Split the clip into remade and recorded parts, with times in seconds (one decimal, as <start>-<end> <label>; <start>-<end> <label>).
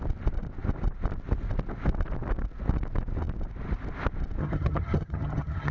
0.0-4.4 recorded; 4.4-5.7 remade